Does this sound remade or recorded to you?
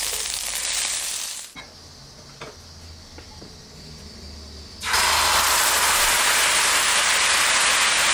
recorded